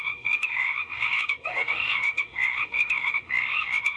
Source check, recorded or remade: remade